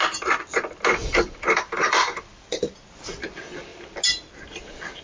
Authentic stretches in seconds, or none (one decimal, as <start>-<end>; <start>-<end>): 0.0-1.0; 2.7-5.0